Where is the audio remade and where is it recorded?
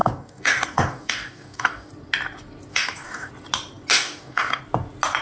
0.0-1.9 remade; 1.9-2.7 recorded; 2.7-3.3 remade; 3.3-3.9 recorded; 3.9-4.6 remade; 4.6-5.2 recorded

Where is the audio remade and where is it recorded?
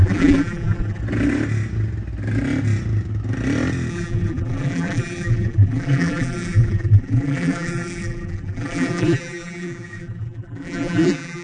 0.0-1.0 remade; 1.0-3.9 recorded; 3.9-11.4 remade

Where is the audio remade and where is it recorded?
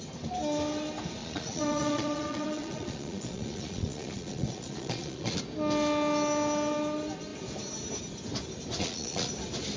0.0-1.2 recorded; 1.2-5.4 remade; 5.4-8.8 recorded; 8.8-9.3 remade; 9.3-9.8 recorded